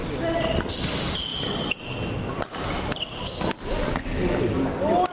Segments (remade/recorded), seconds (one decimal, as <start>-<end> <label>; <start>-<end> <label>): 0.0-5.1 recorded